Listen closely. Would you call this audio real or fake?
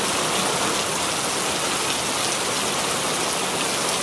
real